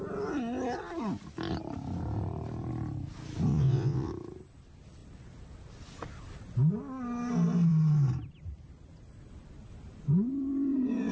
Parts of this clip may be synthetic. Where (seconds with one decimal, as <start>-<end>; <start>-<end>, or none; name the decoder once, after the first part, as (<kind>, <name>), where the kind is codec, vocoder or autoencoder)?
3.5-4.1 (vocoder, WaveNeXt)